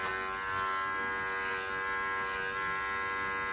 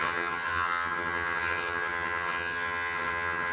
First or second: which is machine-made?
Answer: second